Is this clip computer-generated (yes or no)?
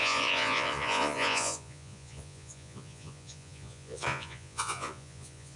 yes